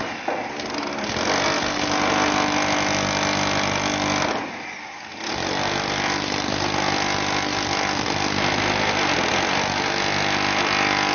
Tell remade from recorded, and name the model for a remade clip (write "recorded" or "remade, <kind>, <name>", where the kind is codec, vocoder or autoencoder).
recorded